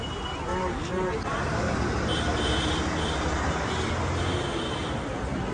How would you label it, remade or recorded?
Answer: recorded